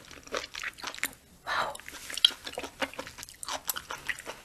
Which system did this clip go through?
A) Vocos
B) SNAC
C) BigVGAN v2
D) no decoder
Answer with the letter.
D